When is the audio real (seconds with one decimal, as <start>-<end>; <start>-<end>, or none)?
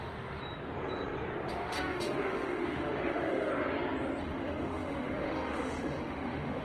0.4-1.5; 3.5-4.2